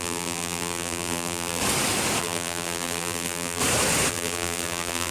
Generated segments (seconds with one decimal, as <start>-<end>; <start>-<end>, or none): 0.0-1.6; 2.2-3.6; 4.1-5.1